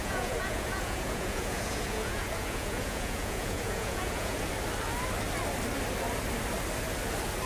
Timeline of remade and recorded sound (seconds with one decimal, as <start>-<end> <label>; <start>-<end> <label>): 0.0-4.5 remade; 4.5-7.5 recorded